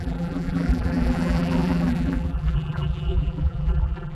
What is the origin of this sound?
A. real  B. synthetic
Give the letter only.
B